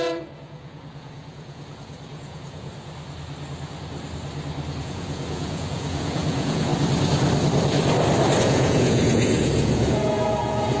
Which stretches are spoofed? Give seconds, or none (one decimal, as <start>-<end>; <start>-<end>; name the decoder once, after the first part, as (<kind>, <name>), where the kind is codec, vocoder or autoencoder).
0.0-2.7 (vocoder, Vocos); 4.8-6.7; 8.4-10.8